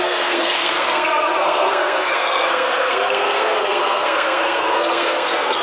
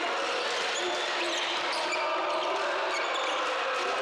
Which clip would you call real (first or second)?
second